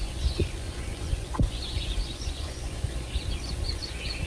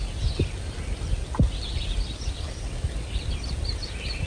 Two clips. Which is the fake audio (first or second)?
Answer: first